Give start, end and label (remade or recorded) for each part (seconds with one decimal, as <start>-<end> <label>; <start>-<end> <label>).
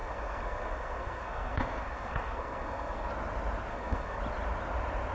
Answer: 0.0-3.1 remade; 3.1-3.7 recorded; 3.7-4.2 remade; 4.2-5.1 recorded